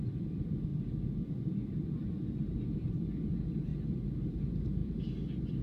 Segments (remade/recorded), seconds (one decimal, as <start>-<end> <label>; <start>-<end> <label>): 0.0-0.7 remade; 0.7-2.3 recorded; 2.3-3.7 remade; 3.7-4.2 recorded; 4.2-5.6 remade